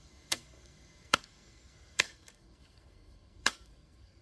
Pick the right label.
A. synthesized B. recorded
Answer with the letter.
A